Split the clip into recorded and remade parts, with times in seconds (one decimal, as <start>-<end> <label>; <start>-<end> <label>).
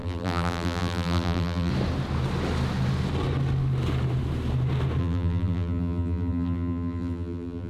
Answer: 0.0-1.7 remade; 1.7-5.0 recorded; 5.0-7.7 remade